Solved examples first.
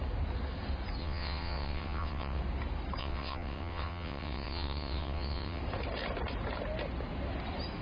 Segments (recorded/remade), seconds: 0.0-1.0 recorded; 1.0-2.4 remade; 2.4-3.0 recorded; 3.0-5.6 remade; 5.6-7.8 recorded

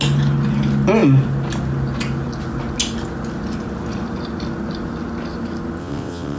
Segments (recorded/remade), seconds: 0.0-5.8 recorded; 5.8-6.4 remade